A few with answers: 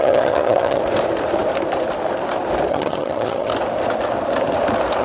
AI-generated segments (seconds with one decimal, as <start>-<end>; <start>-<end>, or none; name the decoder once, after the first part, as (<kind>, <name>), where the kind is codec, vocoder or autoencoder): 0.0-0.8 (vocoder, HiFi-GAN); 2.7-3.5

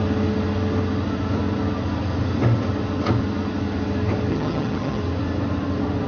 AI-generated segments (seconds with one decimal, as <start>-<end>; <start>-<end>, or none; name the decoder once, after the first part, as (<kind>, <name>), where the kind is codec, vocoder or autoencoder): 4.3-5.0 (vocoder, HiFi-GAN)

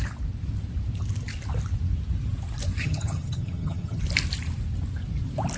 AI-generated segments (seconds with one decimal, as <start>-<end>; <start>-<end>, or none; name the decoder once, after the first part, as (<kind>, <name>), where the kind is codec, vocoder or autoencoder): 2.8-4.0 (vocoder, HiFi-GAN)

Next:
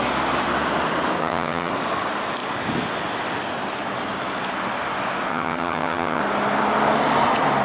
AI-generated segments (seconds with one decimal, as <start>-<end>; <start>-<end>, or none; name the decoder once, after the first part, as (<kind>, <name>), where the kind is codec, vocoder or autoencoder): 1.2-1.7 (vocoder, HiFi-GAN); 5.3-6.2